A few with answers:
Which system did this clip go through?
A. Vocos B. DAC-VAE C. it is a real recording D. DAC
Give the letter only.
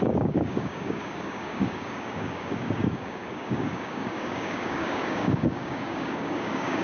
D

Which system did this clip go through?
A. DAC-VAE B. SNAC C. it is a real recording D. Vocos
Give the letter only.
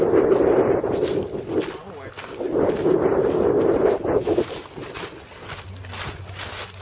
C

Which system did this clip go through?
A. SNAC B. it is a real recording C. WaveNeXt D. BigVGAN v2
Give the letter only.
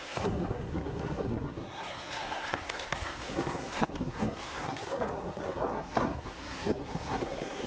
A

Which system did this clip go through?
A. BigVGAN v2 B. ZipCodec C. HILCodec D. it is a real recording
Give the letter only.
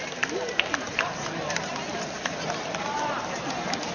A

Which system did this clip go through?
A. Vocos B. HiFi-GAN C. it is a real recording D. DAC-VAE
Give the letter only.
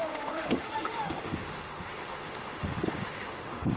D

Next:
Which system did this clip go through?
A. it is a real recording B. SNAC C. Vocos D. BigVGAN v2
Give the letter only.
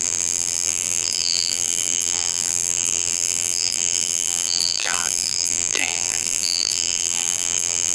D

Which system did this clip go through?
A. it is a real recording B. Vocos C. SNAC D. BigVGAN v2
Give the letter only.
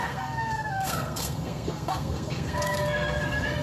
C